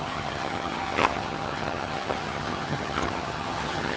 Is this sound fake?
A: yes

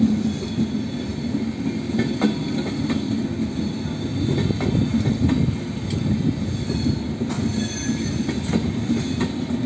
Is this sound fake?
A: no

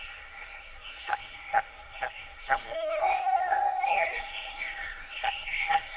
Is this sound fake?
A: yes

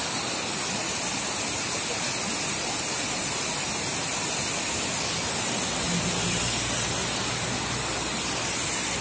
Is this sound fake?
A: no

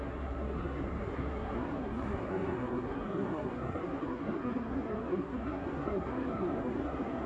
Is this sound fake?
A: yes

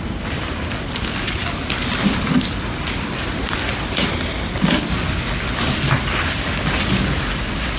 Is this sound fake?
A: no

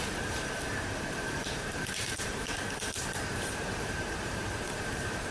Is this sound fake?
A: yes